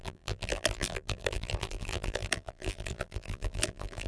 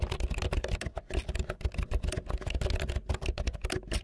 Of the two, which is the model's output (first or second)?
first